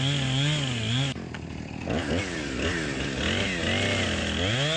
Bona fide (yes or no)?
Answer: yes